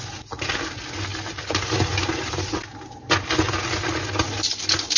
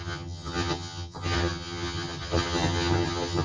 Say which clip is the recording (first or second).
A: first